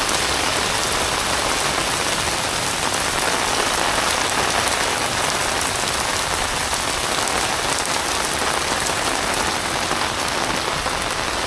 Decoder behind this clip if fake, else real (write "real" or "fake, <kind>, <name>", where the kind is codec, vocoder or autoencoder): real